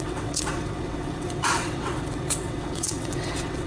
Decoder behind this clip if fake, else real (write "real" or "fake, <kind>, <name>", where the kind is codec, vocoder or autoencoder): fake, vocoder, WaveNeXt